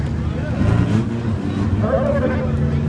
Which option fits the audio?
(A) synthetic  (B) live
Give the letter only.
B